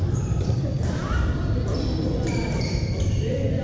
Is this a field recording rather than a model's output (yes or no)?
no